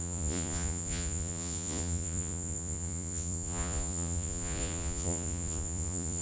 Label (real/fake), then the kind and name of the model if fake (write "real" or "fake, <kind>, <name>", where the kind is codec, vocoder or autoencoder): fake, vocoder, Vocos